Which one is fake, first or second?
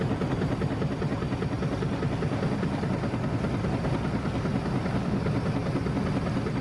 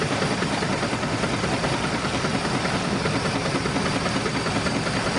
second